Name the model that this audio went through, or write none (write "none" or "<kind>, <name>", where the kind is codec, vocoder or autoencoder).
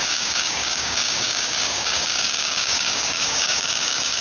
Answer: codec, DAC